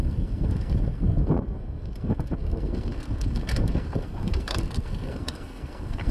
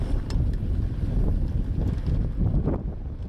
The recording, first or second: second